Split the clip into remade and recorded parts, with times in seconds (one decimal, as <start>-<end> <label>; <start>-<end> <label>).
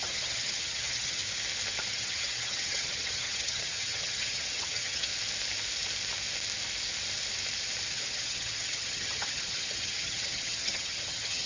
0.0-1.2 remade; 1.2-1.9 recorded; 1.9-5.1 remade; 5.1-7.9 recorded; 7.9-11.5 remade